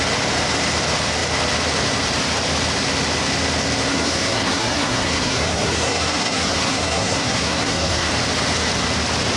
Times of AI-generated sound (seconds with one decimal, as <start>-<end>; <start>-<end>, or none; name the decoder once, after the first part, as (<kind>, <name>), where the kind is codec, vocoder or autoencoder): 3.9-8.1 (codec, SNAC)